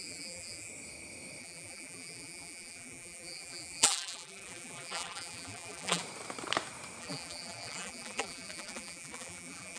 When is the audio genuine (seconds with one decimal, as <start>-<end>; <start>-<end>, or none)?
0.7-1.4; 6.0-7.0

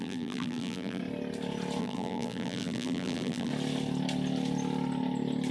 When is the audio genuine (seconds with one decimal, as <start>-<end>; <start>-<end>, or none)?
1.0-1.8; 3.5-5.5

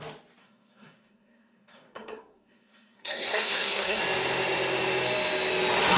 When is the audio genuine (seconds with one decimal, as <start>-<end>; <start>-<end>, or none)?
0.0-0.4; 4.0-6.0

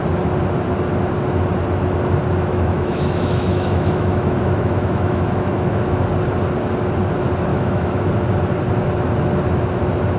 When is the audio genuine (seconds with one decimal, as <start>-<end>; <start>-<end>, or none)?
0.0-2.5; 6.0-7.5; 8.1-10.2